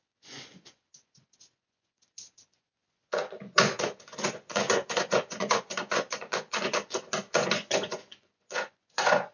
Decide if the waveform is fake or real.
fake